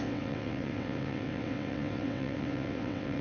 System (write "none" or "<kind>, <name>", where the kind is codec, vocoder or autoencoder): vocoder, WaveNeXt